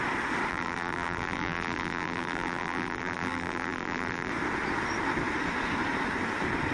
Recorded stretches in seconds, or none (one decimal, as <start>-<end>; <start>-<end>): 0.0-0.5; 4.3-6.7